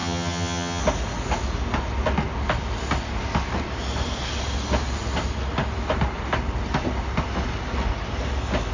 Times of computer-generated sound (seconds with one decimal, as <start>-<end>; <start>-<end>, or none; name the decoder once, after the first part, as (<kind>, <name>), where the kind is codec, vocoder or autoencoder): 0.0-0.8 (vocoder, HiFi-GAN)

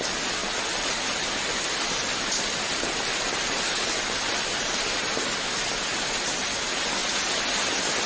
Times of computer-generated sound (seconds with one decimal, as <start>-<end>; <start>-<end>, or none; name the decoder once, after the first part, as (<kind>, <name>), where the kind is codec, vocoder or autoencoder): none

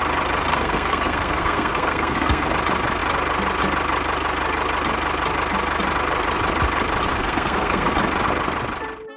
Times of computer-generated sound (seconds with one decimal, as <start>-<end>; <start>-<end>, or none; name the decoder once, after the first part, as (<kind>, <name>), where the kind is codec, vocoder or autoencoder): 0.5-2.5 (codec, SNAC); 7.1-7.9

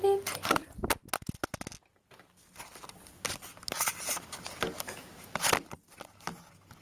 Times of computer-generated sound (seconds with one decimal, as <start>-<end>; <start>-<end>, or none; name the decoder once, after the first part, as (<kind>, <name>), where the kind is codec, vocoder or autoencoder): none

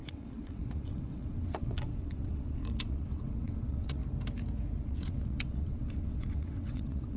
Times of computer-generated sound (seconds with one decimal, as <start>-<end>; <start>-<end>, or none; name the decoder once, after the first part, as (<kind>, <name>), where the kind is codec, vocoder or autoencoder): 0.0-4.0 (vocoder, WaveNeXt); 4.8-7.2

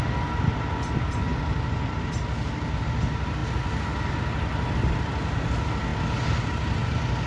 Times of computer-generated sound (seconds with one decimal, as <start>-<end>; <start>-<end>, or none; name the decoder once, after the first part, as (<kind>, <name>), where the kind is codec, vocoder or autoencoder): none

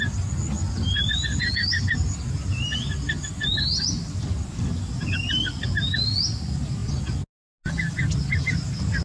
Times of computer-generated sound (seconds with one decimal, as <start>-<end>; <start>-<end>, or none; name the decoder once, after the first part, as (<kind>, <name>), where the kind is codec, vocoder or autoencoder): none

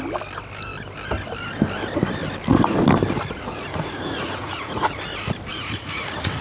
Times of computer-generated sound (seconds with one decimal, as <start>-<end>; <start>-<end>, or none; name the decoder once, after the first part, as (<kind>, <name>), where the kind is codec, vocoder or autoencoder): 3.7-5.0 (vocoder, Vocos); 5.5-6.4